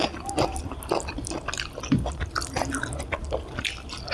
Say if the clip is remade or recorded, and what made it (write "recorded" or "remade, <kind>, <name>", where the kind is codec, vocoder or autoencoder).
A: recorded